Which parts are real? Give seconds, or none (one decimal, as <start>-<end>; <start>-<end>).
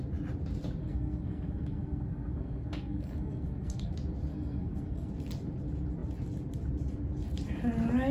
0.0-0.8; 3.9-4.3; 5.1-8.1